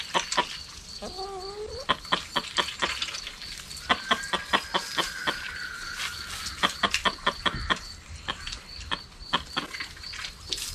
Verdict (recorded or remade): recorded